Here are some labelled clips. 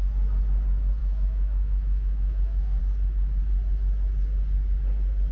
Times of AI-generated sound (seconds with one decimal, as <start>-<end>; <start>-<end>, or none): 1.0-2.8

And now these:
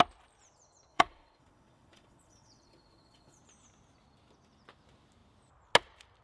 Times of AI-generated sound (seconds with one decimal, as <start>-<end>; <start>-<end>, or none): 0.9-3.4

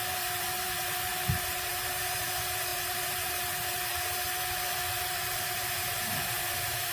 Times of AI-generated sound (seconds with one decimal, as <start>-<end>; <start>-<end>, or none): 0.0-6.9

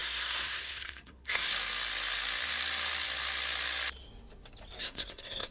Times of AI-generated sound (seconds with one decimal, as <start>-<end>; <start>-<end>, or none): 0.0-1.5; 4.8-5.5